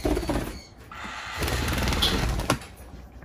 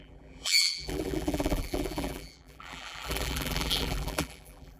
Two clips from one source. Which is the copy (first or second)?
second